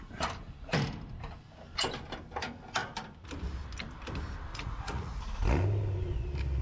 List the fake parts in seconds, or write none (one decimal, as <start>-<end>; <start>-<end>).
4.5-5.2